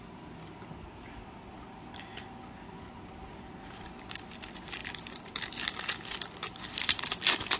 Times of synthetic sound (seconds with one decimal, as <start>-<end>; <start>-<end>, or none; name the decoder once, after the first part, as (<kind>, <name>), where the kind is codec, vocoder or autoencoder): none